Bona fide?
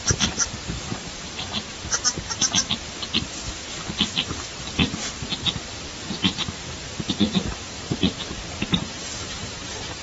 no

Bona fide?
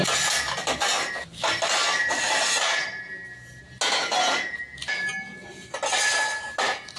yes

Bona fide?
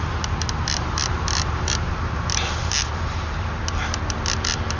yes